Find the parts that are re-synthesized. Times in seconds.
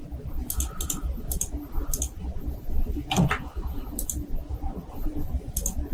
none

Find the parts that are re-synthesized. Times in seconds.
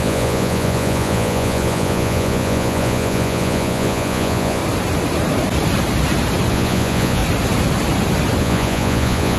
0.0-4.6 (vocoder, Vocos); 6.5-7.2; 8.4-9.4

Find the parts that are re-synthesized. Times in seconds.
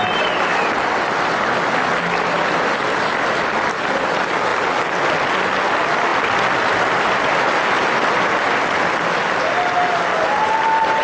none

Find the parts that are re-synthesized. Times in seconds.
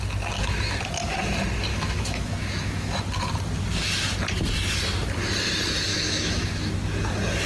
1.7-3.0 (autoencoder, DAC-VAE); 5.9-6.7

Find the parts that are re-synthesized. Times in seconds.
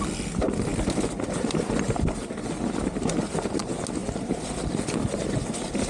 none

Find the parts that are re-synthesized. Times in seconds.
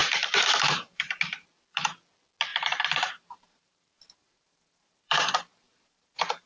0.0-1.2 (vocoder, BigVGAN v2); 2.5-6.5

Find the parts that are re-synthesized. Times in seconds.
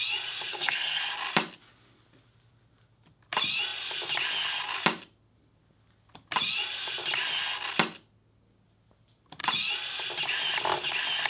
0.5-1.0 (codec, SNAC)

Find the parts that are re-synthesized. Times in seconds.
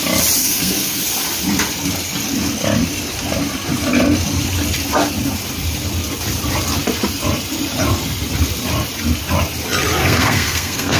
0.4-1.0 (codec, SNAC); 10.0-11.0